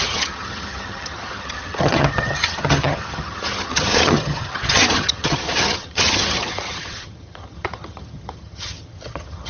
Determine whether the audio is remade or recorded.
remade